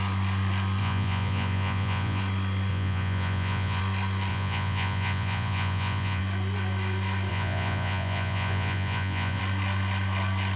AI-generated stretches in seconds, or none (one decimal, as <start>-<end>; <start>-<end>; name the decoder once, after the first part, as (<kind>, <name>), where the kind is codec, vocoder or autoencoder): 0.8-2.2 (vocoder, Vocos); 2.7-3.8; 4.3-6.2; 7.3-9.4